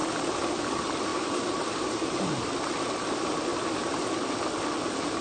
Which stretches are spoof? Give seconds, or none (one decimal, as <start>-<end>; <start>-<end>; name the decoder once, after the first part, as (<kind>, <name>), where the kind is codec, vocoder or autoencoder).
1.1-2.5 (vocoder, BigVGAN v2)